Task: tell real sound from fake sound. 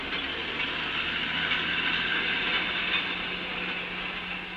real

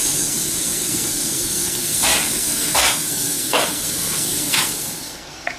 fake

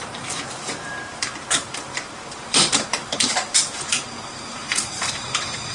fake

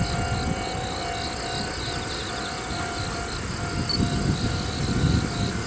real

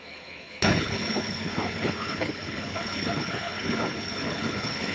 fake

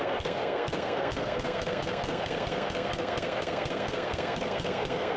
fake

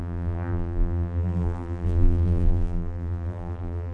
fake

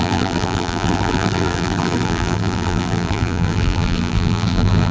fake